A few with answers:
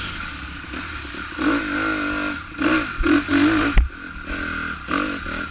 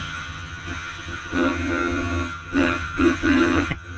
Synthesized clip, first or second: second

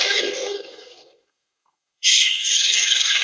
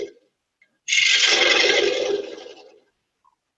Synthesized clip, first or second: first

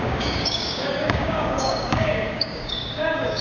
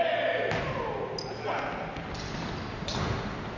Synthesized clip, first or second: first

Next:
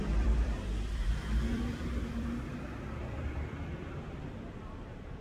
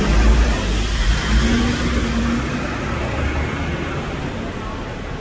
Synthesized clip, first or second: first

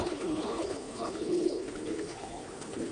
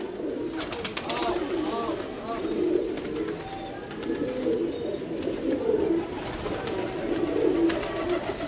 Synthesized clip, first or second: first